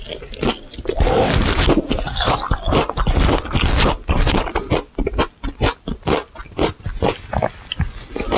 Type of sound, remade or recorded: recorded